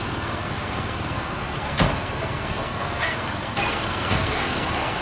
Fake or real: fake